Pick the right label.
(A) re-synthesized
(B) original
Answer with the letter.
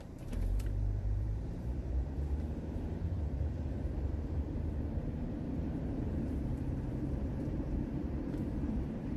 A